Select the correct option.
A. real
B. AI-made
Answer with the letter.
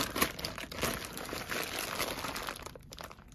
A